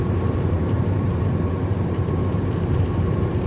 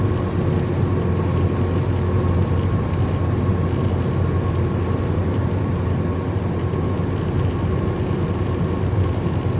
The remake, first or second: first